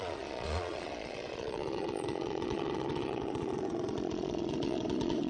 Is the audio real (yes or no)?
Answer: no